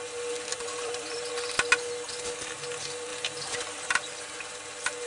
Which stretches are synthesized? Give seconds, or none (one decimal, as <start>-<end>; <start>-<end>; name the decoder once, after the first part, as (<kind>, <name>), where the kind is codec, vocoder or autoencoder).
0.5-1.3 (vocoder, BigVGAN v2); 3.1-3.9